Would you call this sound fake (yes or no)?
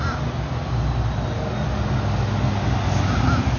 no